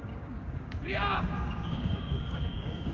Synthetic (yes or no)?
yes